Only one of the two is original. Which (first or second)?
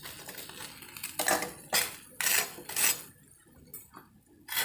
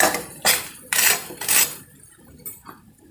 first